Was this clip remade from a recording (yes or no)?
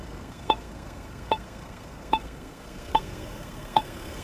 yes